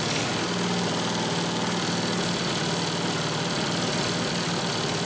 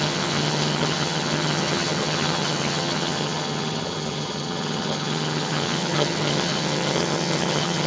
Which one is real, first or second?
first